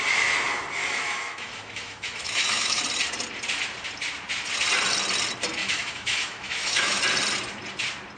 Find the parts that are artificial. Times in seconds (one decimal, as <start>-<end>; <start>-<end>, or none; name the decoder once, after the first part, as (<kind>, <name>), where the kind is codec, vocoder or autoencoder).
0.8-2.8 (autoencoder, DAC-VAE); 5.6-7.0